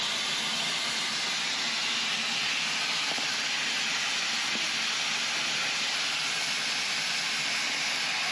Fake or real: real